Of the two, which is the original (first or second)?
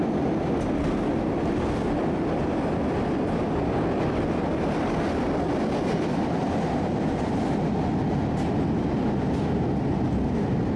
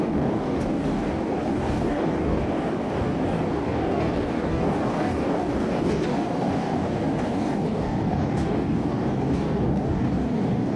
first